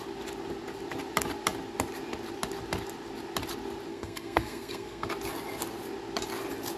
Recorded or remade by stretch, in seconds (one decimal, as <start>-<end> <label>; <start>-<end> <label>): 0.0-3.9 recorded; 3.9-5.1 remade; 5.1-6.8 recorded